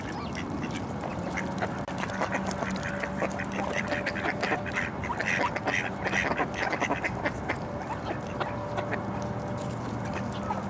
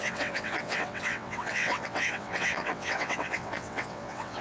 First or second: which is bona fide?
first